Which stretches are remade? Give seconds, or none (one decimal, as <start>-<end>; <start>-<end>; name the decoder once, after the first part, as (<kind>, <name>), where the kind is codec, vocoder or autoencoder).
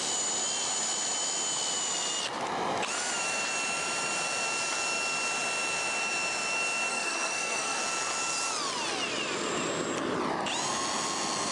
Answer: 6.9-7.8 (codec, SNAC)